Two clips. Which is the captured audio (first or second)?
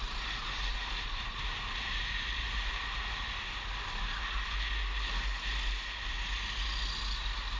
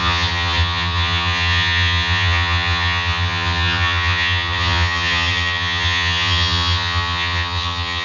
first